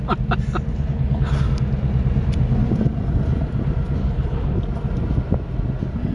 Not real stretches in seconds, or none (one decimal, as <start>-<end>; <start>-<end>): 0.7-1.4; 4.0-4.6